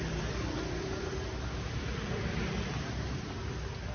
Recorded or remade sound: recorded